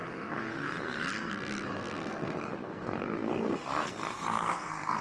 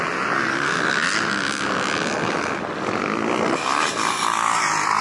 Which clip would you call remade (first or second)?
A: first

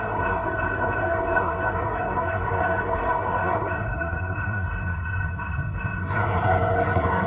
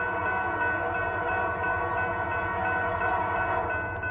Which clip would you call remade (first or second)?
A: first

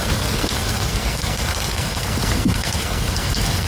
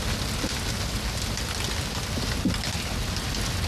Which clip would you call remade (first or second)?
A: first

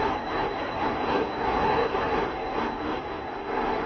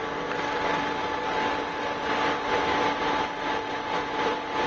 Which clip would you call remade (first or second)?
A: first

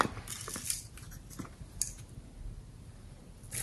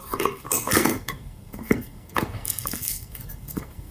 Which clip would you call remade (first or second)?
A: second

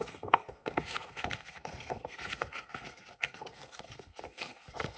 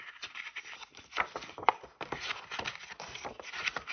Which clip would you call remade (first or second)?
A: first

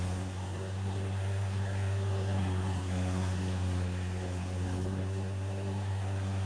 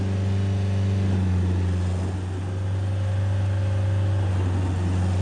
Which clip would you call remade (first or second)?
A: first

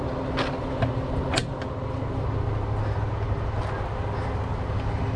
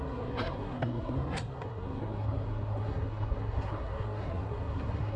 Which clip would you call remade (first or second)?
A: second